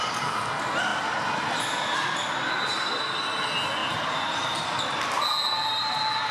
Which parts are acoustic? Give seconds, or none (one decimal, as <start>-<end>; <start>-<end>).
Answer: 0.0-0.9; 3.2-3.8; 5.2-6.3